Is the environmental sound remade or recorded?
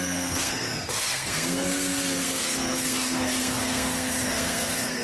remade